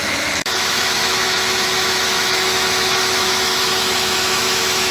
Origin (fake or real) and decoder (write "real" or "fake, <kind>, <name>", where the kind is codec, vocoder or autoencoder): fake, autoencoder, DAC-VAE